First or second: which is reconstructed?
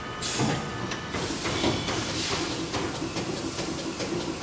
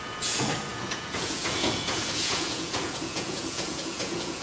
second